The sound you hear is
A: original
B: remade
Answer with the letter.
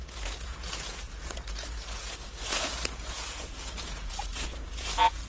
B